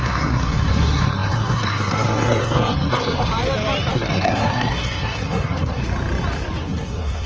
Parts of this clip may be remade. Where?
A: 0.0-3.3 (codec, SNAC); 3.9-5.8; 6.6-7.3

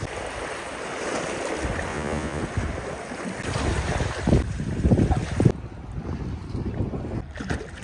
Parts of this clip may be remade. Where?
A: 1.9-2.4 (vocoder, Vocos)